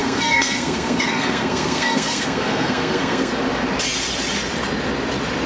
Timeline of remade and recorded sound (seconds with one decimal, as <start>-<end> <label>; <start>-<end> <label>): 0.0-3.3 remade; 3.3-5.5 recorded